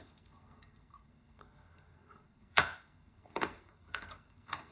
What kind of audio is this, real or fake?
fake